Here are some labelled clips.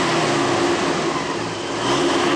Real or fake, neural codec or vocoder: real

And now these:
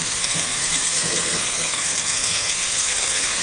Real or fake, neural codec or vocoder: fake, codec, SNAC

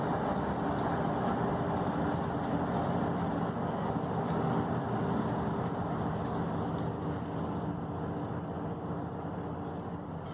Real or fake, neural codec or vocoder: real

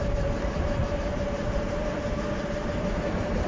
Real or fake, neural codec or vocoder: fake, vocoder, BigVGAN v2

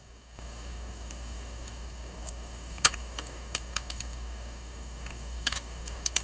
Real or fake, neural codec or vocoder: fake, codec, DAC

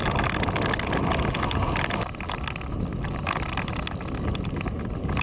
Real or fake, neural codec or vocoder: real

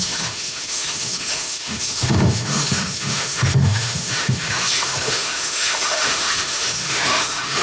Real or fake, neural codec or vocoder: fake, autoencoder, DAC-VAE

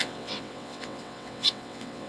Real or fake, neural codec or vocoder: fake, vocoder, WaveNeXt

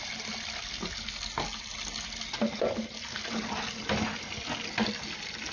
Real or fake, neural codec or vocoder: real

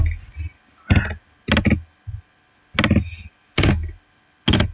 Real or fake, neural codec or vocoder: real